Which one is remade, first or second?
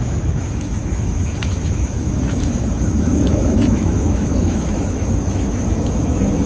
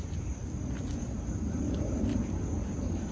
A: first